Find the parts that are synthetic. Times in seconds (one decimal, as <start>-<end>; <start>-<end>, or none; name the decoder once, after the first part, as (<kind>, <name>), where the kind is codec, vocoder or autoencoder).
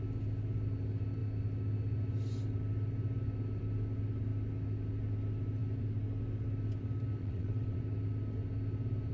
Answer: 7.2-7.8 (vocoder, WaveNeXt)